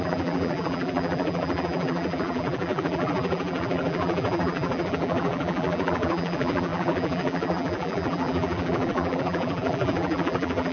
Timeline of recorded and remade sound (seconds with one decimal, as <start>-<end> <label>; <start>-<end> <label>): 0.0-10.7 remade